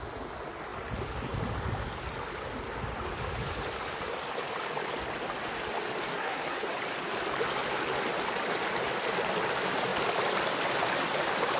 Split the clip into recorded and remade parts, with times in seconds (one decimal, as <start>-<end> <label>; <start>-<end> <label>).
0.0-6.1 recorded; 6.1-6.7 remade; 6.7-11.6 recorded